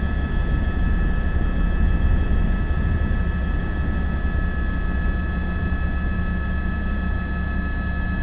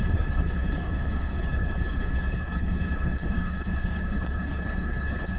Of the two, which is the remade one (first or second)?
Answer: second